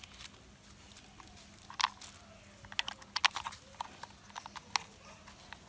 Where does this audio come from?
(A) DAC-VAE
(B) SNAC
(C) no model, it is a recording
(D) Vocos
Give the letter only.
C